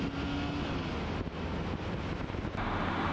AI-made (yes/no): no